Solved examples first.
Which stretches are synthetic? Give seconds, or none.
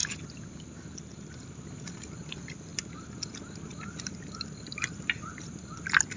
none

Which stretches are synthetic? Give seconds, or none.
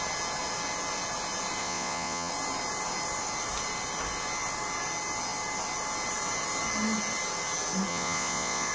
1.6-2.3 (vocoder, Vocos); 7.9-8.7